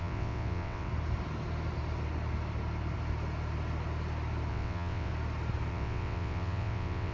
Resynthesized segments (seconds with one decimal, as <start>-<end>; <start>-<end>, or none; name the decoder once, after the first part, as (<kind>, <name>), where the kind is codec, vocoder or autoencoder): 0.0-0.9 (vocoder, WaveNeXt); 4.5-5.1; 5.7-7.1